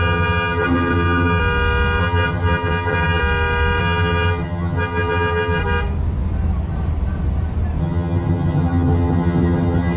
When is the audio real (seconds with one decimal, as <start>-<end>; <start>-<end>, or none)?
1.4-2.0; 3.2-3.8; 5.6-7.8